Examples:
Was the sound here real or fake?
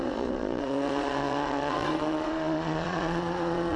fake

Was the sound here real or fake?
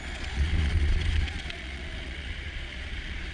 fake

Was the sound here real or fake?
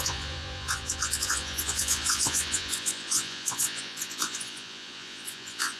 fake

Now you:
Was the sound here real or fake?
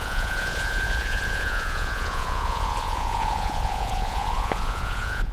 fake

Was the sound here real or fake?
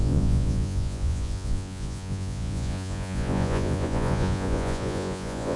fake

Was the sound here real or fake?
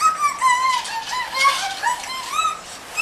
real